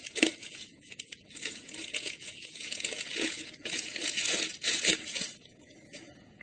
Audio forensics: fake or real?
fake